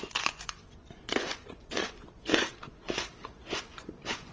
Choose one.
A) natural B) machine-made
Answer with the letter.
B